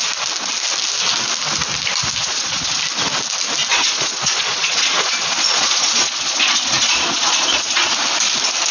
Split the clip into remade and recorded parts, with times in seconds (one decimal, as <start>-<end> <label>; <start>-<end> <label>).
0.0-2.2 recorded; 2.2-2.7 remade; 2.7-3.7 recorded; 3.7-7.9 remade; 7.9-8.7 recorded